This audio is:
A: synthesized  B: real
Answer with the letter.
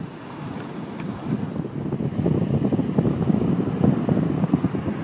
B